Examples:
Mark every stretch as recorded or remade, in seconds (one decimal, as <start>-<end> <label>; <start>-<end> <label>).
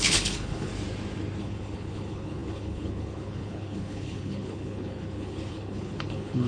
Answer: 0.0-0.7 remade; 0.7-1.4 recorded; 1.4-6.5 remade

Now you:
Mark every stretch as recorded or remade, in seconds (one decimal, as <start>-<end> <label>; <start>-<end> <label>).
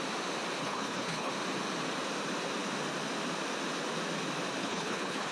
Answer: 0.0-0.6 recorded; 0.6-1.3 remade; 1.3-4.6 recorded; 4.6-5.3 remade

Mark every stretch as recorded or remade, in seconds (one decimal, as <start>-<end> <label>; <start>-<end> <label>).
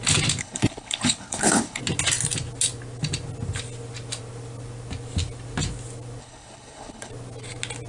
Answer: 0.0-0.4 recorded; 0.4-1.8 remade; 1.8-6.2 recorded; 6.2-7.1 remade; 7.1-7.9 recorded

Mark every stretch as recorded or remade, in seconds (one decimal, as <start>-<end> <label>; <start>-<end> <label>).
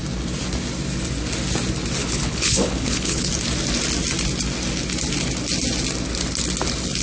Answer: 0.0-2.0 recorded; 2.0-3.3 remade; 3.3-7.0 recorded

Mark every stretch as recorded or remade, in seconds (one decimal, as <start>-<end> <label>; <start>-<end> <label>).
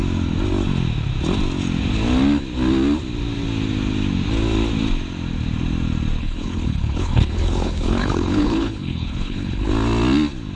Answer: 0.0-6.2 recorded; 6.2-9.7 remade; 9.7-10.6 recorded